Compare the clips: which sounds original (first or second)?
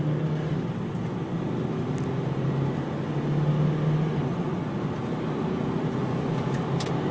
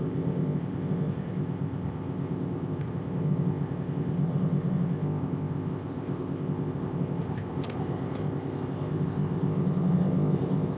first